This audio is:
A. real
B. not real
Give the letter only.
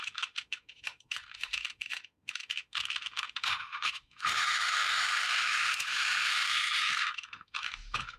B